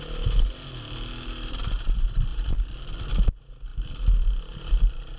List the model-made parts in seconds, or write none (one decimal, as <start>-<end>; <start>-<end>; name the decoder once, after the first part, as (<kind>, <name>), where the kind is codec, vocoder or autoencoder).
none